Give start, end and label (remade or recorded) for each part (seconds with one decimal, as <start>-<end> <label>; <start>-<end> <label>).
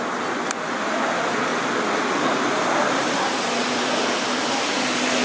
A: 0.0-1.5 recorded; 1.5-4.6 remade; 4.6-5.2 recorded